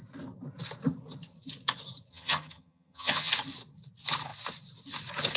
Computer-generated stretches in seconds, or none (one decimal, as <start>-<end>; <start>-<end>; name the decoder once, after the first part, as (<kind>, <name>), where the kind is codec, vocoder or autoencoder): 2.1-3.3 (vocoder, HiFi-GAN)